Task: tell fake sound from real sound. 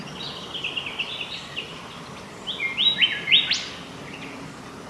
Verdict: real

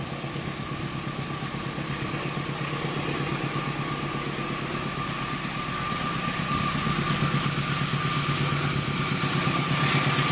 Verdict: real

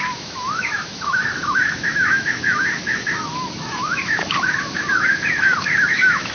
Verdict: fake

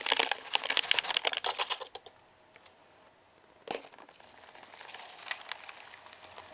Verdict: real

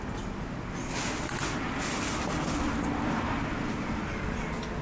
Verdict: real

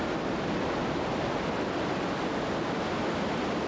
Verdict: real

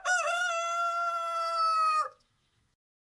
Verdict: fake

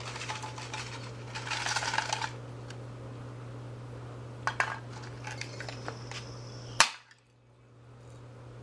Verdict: real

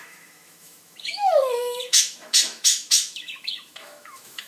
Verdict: fake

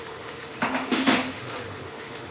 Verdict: fake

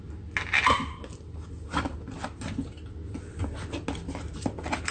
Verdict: real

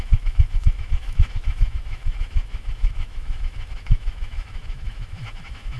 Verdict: fake